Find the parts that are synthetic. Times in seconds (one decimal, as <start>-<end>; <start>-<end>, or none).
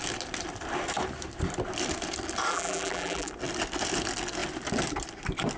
2.5-3.3